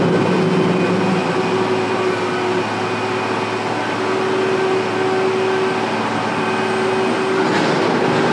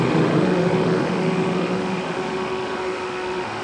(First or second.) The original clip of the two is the first